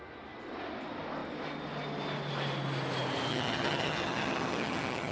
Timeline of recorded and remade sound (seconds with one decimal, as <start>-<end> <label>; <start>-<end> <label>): 0.0-3.3 recorded; 3.3-5.1 remade